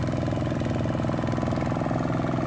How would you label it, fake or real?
real